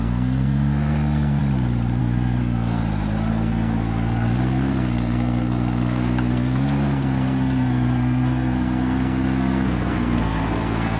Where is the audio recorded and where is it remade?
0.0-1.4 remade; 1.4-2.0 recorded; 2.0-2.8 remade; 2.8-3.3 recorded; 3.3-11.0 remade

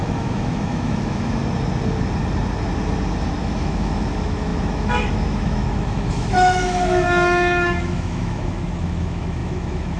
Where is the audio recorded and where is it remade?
0.0-1.4 remade; 1.4-3.4 recorded; 3.4-10.0 remade

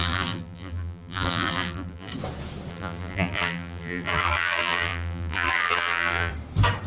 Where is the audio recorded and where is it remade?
0.0-2.1 remade; 2.1-2.7 recorded; 2.7-6.3 remade; 6.3-6.9 recorded

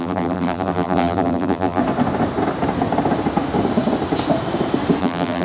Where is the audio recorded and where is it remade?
0.0-1.8 remade; 1.8-5.0 recorded; 5.0-5.4 remade

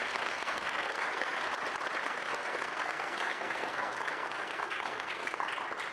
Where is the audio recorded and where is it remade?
0.0-1.4 remade; 1.4-2.0 recorded; 2.0-5.5 remade; 5.5-5.9 recorded

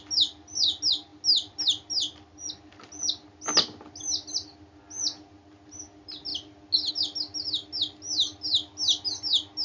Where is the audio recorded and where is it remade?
0.0-9.6 recorded

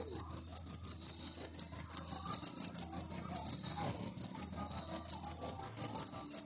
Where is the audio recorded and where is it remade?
0.0-6.5 recorded

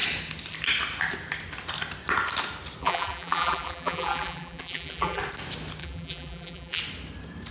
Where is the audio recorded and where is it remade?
0.0-2.8 recorded; 2.8-5.2 remade; 5.2-5.8 recorded; 5.8-6.8 remade; 6.8-7.5 recorded